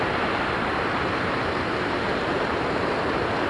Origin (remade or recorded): remade